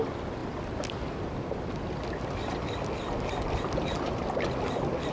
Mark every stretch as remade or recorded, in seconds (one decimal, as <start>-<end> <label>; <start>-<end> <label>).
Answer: 0.0-5.1 recorded